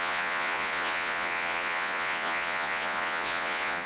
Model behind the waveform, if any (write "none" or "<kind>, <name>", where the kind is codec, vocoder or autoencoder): vocoder, Vocos